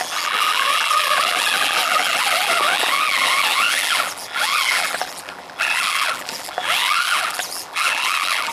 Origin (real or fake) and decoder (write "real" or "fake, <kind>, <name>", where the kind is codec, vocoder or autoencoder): fake, vocoder, BigVGAN v2